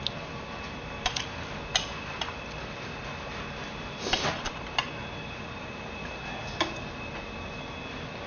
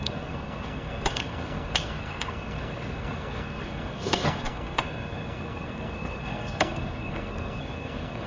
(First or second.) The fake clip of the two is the second